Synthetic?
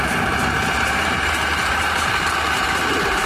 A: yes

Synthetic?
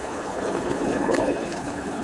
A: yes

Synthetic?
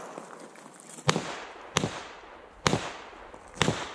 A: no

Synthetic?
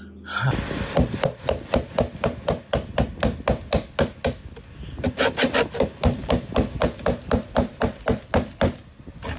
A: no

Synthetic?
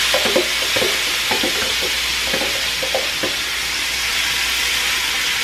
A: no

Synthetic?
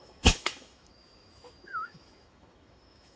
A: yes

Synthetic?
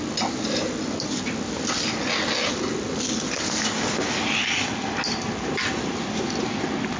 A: no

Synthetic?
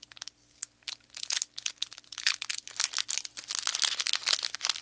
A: no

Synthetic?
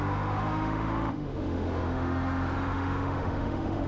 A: yes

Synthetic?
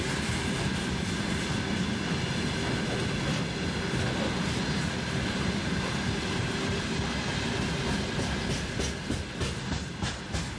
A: no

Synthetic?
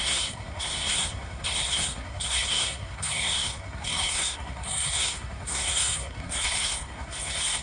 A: yes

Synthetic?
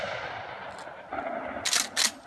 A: no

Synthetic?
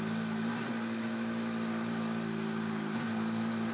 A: no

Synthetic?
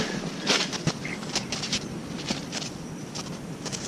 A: yes